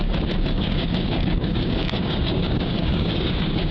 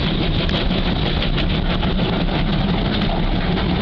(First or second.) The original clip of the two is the second